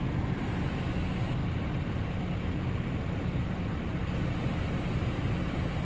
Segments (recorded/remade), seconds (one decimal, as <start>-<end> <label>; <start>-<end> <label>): 0.0-5.8 recorded